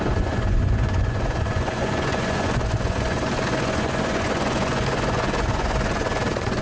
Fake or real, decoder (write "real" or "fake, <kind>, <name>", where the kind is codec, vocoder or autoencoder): fake, vocoder, Vocos